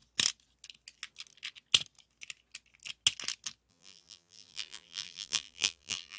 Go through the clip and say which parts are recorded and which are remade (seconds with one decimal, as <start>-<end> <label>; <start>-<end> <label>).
0.0-3.7 recorded; 3.7-6.2 remade